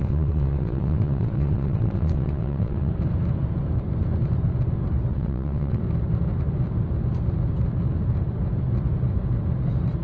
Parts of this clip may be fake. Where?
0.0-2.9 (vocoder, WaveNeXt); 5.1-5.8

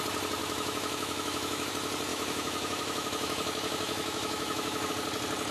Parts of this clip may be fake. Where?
0.4-1.7 (autoencoder, DAC-VAE); 2.1-4.9

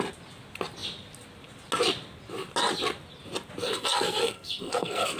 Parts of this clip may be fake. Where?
3.6-5.2 (codec, SNAC)

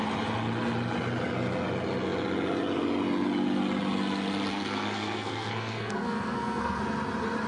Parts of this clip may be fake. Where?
4.5-6.8 (codec, SNAC)

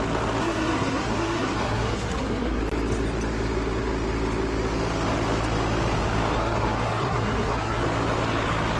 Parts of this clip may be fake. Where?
0.4-2.6 (codec, SNAC); 6.3-7.8

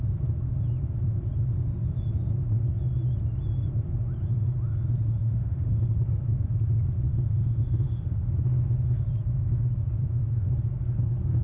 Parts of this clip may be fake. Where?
5.2-5.8 (autoencoder, DAC-VAE); 7.1-8.3